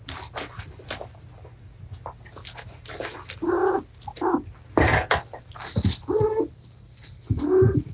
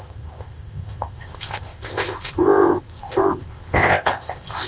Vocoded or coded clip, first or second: second